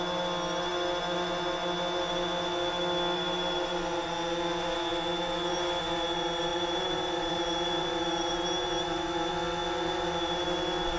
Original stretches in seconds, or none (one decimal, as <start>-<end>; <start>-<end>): 0.0-6.5; 9.3-11.0